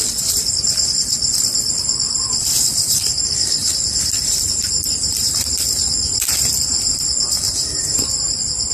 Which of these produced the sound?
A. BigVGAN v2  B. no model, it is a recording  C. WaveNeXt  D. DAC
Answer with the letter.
A